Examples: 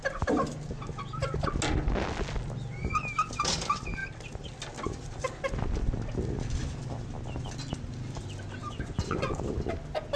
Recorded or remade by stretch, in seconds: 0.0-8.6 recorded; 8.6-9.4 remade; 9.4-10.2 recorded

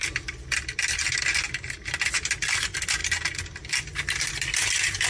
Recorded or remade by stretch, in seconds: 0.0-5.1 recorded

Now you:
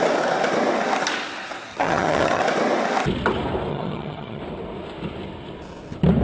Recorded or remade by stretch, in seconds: 0.0-1.7 recorded; 1.7-2.4 remade; 2.4-3.7 recorded; 3.7-4.4 remade; 4.4-6.2 recorded

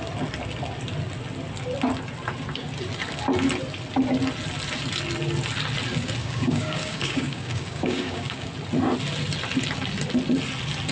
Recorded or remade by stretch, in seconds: 0.0-6.2 recorded; 6.2-8.5 remade; 8.5-10.9 recorded

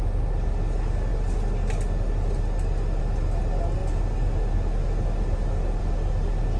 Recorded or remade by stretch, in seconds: 0.0-6.6 recorded

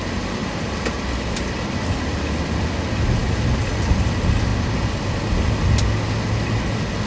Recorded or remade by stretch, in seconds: 0.0-7.1 recorded

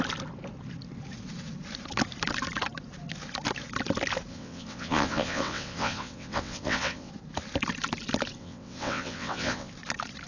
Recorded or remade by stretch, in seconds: 0.0-4.3 recorded; 4.3-7.1 remade; 7.1-8.4 recorded; 8.4-9.7 remade; 9.7-10.3 recorded